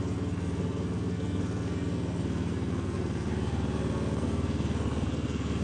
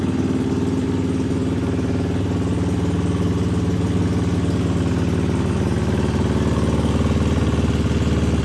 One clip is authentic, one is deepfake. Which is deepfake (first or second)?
first